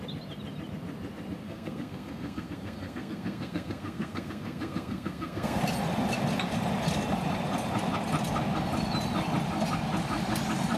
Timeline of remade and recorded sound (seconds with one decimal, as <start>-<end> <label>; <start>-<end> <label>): 0.0-1.4 recorded; 1.4-5.6 remade; 5.6-10.8 recorded